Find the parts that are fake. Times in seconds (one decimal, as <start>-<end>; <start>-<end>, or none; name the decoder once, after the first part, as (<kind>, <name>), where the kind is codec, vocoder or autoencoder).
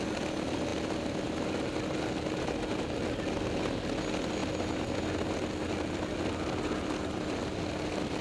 none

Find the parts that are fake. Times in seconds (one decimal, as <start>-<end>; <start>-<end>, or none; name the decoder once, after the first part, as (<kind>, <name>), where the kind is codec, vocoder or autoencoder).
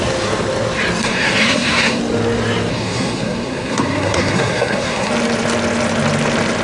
1.0-2.0 (codec, SNAC); 2.7-5.1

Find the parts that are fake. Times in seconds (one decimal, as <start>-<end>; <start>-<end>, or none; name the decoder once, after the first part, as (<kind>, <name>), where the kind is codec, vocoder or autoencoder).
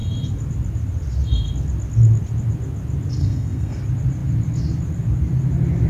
3.2-3.8 (codec, SNAC)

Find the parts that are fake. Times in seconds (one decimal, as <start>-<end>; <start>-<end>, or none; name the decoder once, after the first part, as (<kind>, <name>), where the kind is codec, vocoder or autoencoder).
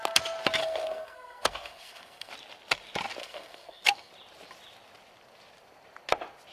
0.6-2.3 (codec, SNAC); 3.2-4.1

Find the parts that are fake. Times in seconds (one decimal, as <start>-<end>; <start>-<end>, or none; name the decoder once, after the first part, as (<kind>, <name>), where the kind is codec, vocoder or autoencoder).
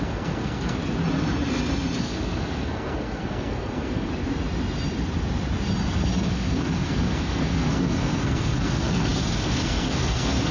0.0-0.8 (codec, SNAC); 2.0-4.1; 6.3-10.5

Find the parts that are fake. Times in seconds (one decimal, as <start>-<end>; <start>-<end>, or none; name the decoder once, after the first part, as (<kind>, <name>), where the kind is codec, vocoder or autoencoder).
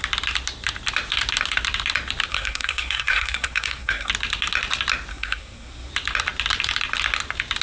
2.3-4.1 (codec, SNAC); 5.1-5.9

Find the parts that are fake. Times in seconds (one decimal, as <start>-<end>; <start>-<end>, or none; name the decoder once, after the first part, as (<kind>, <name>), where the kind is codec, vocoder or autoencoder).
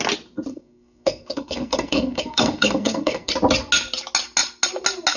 0.5-3.3 (codec, SNAC)